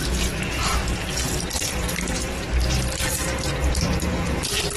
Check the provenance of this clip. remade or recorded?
remade